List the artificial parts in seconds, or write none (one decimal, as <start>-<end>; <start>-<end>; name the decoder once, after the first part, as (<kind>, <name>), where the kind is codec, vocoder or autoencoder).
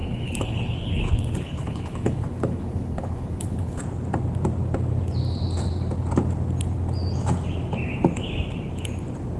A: 0.0-3.8 (codec, HILCodec)